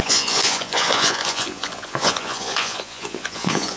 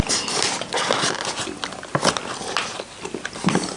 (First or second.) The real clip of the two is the second